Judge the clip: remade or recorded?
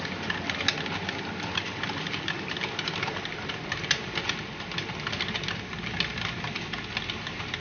recorded